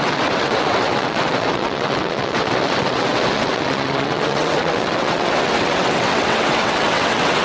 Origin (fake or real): fake